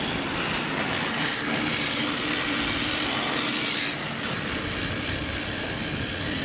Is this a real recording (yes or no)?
yes